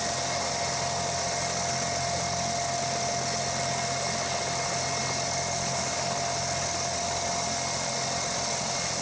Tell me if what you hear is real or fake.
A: real